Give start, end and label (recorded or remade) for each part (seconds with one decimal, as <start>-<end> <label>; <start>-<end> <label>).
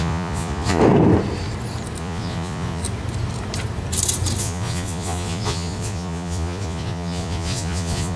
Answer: 0.0-0.8 remade; 0.8-2.0 recorded; 2.0-2.8 remade; 2.8-4.4 recorded; 4.4-8.2 remade